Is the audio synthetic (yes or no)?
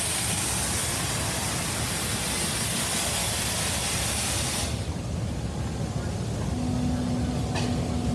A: no